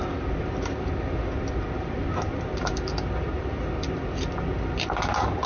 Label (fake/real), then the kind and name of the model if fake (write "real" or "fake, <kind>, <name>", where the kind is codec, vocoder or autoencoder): real